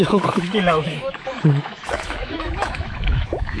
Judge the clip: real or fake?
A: fake